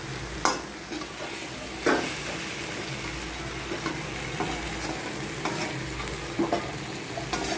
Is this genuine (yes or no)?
yes